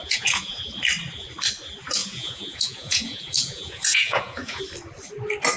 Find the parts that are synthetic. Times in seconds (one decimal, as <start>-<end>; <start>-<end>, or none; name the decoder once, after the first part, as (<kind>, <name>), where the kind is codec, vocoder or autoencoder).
0.0-0.6 (vocoder, Vocos); 2.0-4.6